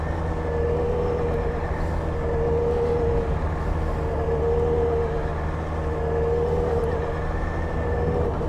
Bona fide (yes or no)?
yes